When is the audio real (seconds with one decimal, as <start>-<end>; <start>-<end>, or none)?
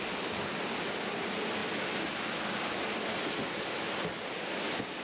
0.0-5.0